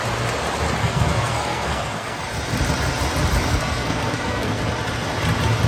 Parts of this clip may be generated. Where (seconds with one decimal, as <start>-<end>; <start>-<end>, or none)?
0.8-2.3; 3.5-4.6